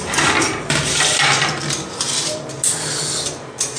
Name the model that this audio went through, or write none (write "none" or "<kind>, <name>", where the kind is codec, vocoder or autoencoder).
none